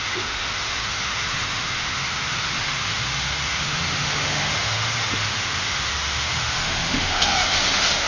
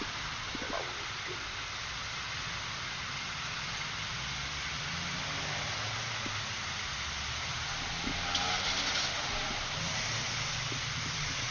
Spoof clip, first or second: first